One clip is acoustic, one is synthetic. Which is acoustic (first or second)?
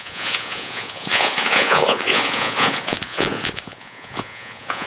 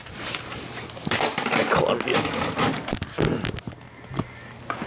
second